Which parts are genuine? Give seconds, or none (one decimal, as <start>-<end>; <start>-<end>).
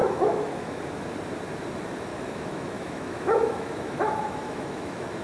0.8-2.1